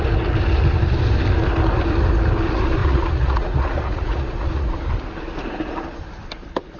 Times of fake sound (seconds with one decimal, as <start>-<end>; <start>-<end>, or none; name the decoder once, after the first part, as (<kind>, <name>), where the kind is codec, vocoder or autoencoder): 2.8-4.7 (vocoder, Vocos)